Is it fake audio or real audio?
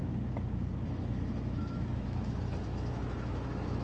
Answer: fake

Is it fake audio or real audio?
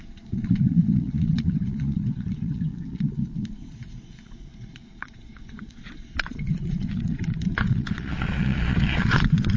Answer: fake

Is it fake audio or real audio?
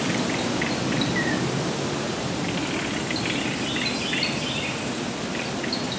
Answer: real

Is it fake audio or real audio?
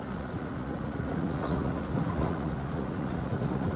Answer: fake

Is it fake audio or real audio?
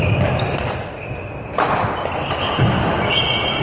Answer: real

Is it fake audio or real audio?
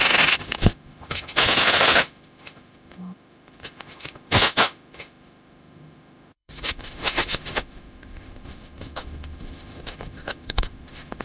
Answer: fake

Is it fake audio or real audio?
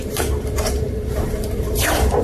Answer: fake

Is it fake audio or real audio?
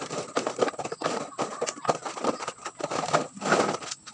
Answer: real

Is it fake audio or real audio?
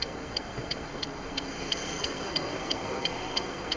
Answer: fake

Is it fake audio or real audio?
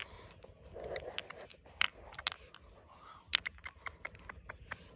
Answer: real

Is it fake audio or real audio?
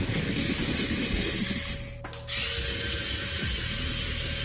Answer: real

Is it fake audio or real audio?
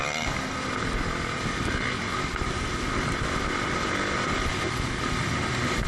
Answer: real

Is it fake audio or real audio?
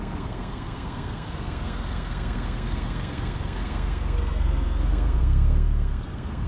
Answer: fake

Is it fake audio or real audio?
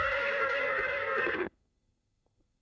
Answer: fake